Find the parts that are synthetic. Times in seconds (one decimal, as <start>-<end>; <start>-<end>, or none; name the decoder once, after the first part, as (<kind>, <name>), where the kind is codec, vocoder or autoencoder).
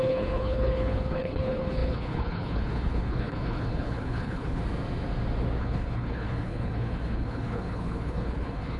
0.0-4.6 (codec, HILCodec); 5.6-8.8